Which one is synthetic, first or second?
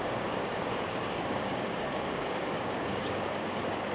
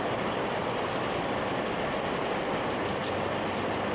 first